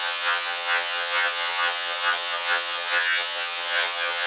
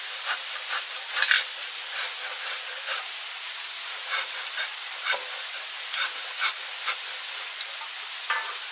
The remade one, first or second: first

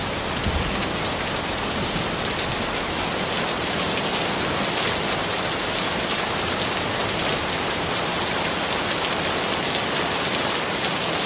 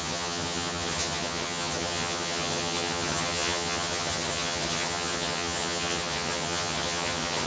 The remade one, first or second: second